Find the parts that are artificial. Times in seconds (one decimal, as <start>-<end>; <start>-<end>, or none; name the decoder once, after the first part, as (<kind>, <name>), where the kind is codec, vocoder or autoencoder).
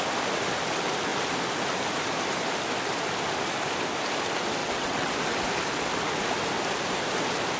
4.6-5.1 (vocoder, WaveNeXt)